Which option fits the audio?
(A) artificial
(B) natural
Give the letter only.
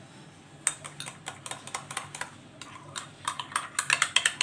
B